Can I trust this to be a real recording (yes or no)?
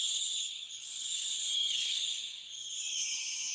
no